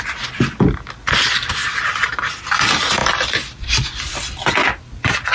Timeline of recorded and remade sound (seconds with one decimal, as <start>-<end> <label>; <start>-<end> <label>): 0.0-1.6 recorded; 1.6-2.3 remade; 2.3-5.3 recorded